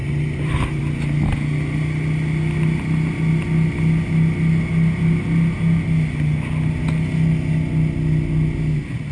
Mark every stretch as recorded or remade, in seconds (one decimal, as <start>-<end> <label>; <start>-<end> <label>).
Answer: 0.0-0.8 remade; 0.8-9.1 recorded